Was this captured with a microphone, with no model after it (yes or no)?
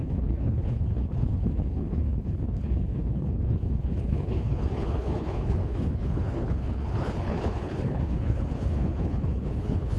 no